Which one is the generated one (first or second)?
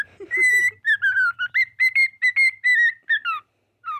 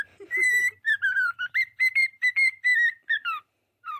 second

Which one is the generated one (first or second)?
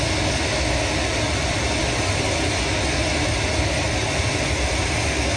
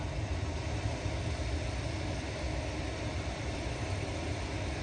second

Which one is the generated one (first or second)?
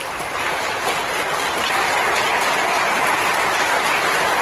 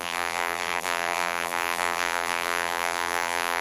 second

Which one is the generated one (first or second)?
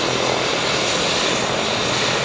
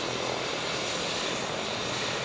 second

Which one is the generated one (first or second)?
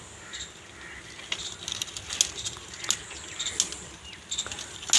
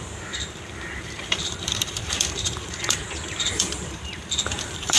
second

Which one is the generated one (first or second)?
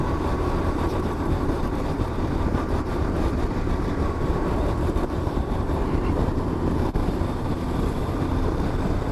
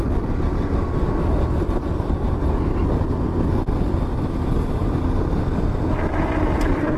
first